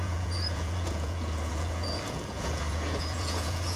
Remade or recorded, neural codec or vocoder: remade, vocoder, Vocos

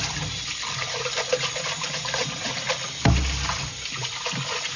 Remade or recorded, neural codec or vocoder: recorded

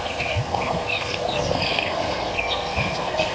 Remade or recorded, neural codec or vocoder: remade, codec, SNAC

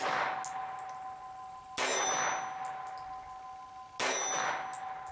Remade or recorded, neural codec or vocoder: recorded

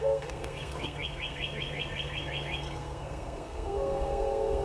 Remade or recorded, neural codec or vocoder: remade, codec, SNAC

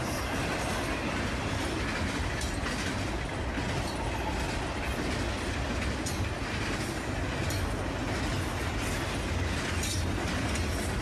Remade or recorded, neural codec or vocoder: recorded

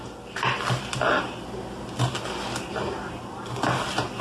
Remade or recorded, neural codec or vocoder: recorded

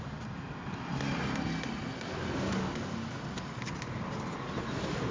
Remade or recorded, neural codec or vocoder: recorded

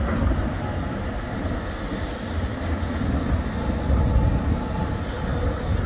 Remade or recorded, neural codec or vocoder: recorded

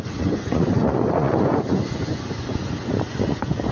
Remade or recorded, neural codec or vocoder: remade, vocoder, Vocos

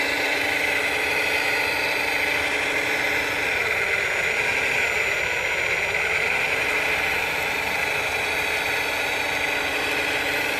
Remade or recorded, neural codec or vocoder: recorded